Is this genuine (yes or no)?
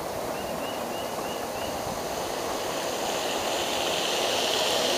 yes